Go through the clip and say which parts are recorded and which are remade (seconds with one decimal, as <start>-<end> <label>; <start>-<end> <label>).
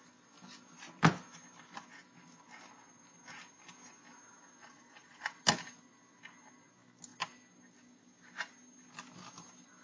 0.0-4.6 recorded; 4.6-5.4 remade; 5.4-9.8 recorded